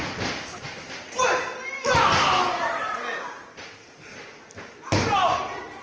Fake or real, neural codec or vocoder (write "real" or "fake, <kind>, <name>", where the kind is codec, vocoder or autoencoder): real